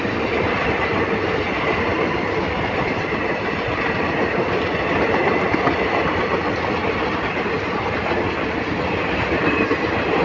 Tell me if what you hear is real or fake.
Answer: real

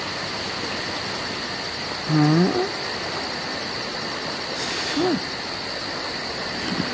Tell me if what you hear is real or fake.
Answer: real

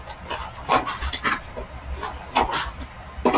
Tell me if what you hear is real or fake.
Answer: real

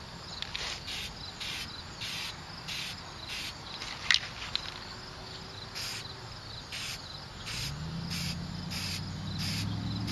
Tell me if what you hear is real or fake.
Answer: real